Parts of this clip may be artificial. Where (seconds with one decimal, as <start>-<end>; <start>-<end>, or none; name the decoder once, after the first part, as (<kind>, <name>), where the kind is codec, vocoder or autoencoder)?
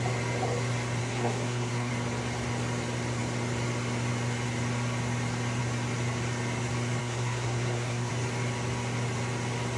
1.0-1.9 (codec, SNAC); 7.0-8.1